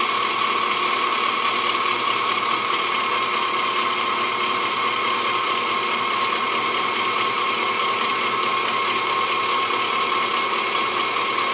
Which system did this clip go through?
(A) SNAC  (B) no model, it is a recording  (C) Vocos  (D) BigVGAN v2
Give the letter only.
B